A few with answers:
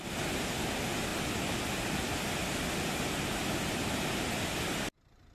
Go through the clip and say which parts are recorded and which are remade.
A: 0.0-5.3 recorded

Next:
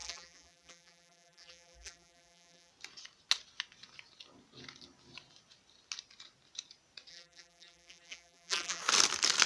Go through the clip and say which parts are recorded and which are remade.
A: 0.0-2.7 remade; 2.7-7.1 recorded; 7.1-8.8 remade; 8.8-9.5 recorded